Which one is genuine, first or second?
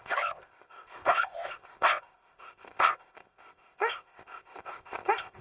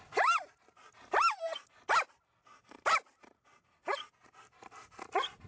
second